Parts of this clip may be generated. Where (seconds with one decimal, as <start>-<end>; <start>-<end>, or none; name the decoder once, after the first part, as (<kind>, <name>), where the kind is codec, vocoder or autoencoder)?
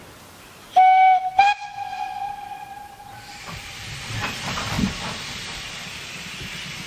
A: 1.6-5.6 (vocoder, BigVGAN v2)